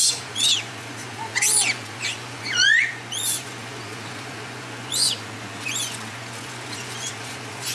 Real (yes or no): no